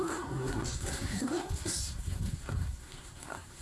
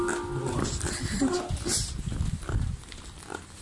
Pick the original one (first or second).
second